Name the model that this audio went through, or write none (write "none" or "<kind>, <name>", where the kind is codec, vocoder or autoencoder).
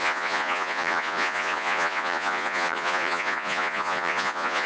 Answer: vocoder, Vocos